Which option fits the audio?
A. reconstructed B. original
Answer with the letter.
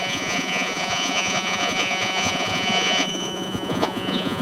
A